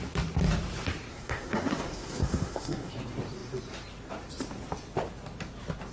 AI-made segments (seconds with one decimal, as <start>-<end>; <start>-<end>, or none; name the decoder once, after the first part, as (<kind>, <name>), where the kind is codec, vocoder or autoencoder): 1.1-2.9 (codec, SNAC)